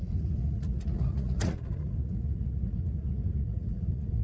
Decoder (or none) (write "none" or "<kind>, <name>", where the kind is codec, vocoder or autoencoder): vocoder, Vocos